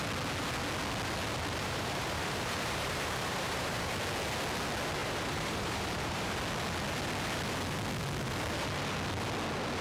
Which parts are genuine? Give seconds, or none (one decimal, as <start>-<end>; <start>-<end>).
0.0-1.6; 3.9-5.0; 6.3-9.8